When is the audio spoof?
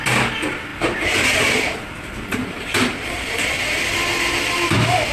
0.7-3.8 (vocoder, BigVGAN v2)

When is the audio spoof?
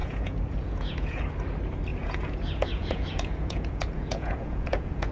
0.0-1.2 (vocoder, Vocos); 1.9-5.1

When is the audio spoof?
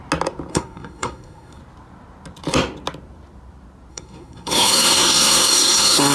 0.5-1.6 (codec, SNAC); 3.9-6.1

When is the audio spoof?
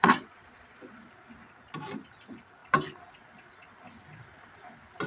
0.0-1.1 (vocoder, Vocos)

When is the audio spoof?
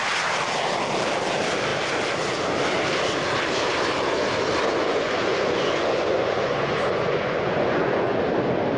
4.8-8.2 (vocoder, Vocos)